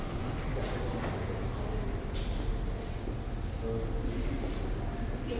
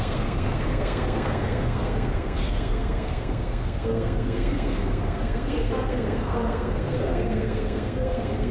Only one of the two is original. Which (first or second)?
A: first